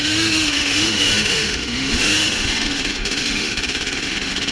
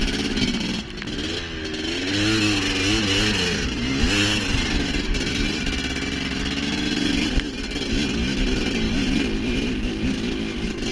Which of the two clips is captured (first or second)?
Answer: second